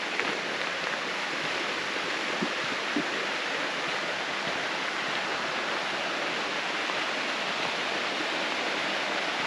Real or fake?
real